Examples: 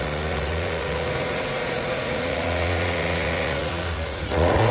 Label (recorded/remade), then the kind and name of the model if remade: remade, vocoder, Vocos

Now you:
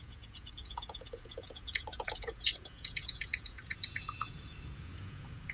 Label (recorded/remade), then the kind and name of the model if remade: remade, vocoder, Vocos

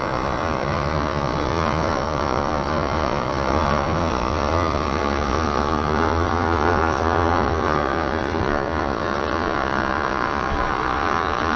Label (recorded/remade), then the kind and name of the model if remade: remade, vocoder, Vocos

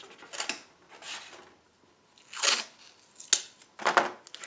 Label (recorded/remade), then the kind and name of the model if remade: recorded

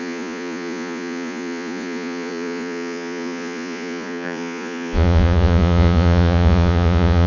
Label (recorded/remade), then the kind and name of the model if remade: remade, vocoder, Vocos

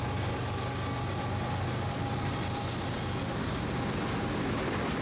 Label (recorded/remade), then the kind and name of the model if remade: recorded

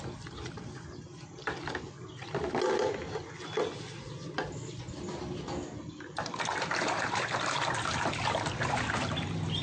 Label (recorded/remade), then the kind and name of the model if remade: recorded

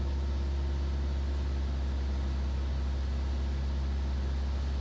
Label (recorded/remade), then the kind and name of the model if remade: recorded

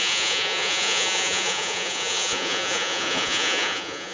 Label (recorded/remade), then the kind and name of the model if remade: remade, vocoder, Vocos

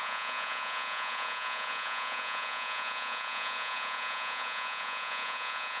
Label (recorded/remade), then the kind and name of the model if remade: remade, vocoder, Vocos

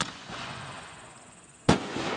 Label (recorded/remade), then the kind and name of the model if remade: remade, vocoder, Vocos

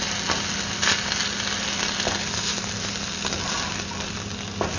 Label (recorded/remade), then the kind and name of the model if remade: recorded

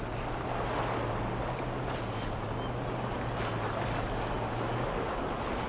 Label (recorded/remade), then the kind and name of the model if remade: recorded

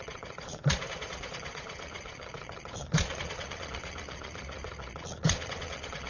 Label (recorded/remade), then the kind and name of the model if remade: remade, vocoder, Vocos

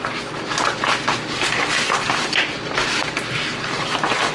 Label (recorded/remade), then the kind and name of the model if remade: recorded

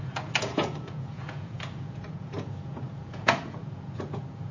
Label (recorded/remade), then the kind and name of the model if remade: remade, vocoder, Vocos